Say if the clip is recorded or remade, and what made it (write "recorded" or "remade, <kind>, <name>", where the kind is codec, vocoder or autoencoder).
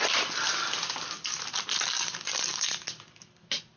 recorded